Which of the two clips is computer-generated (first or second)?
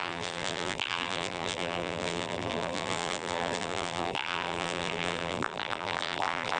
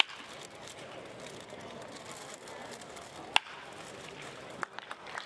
first